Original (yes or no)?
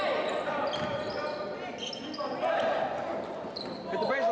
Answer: yes